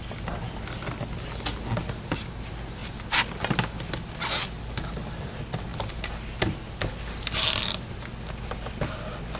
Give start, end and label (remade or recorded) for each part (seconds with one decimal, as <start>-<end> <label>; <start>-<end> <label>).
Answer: 0.0-9.4 recorded